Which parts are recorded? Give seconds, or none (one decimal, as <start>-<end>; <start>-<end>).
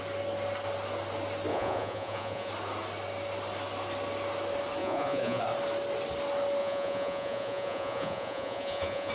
0.0-1.5; 2.5-4.8; 5.4-6.6